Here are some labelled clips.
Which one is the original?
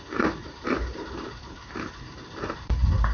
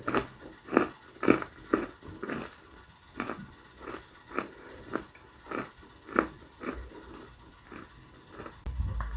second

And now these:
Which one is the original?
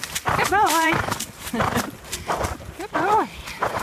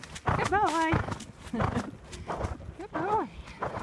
second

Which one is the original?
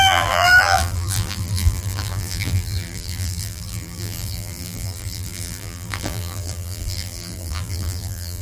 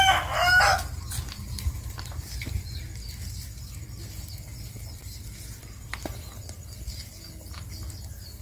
second